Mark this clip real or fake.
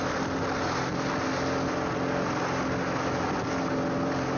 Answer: real